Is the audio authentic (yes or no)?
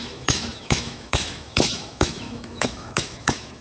no